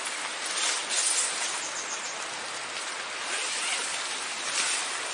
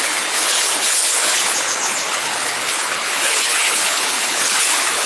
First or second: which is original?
first